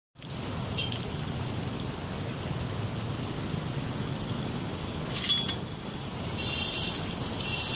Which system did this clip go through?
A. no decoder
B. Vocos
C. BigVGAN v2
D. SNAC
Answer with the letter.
A